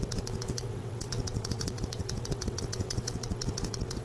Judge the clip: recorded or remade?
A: remade